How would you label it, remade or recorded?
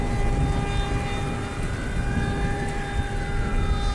recorded